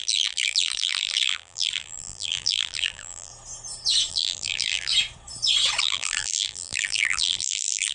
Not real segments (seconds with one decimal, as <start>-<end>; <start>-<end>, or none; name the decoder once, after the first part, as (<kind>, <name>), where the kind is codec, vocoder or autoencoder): 0.0-3.3 (vocoder, BigVGAN v2); 4.1-4.9; 5.8-7.9